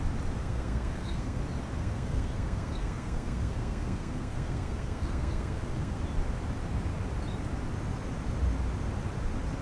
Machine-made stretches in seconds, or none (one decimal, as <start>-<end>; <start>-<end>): 0.4-1.4; 1.8-6.0